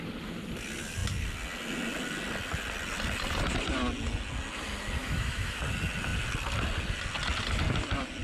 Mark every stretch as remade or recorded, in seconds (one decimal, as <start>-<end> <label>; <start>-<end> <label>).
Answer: 0.0-5.0 recorded; 5.0-5.6 remade; 5.6-8.2 recorded